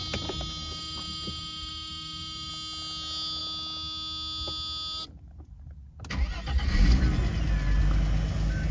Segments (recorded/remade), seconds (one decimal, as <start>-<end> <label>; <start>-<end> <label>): 0.0-2.5 remade; 2.5-8.7 recorded